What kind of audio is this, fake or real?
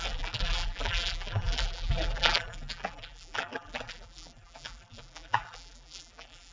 fake